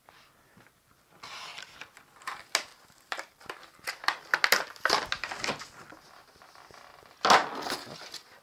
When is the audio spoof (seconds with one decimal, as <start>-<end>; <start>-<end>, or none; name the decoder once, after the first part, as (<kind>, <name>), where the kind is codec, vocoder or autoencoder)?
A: 2.7-3.4 (vocoder, BigVGAN v2)